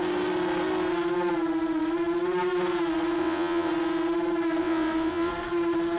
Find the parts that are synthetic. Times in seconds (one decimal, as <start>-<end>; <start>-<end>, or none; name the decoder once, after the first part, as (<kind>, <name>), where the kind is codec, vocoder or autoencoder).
3.2-3.7 (vocoder, WaveNeXt); 4.6-5.3